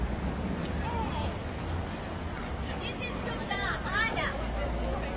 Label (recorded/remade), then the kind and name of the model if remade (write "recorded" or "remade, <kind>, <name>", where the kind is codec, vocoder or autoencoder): remade, vocoder, BigVGAN v2